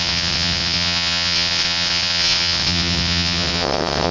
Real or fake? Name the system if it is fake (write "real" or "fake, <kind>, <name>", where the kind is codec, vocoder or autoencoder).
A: fake, vocoder, WaveNeXt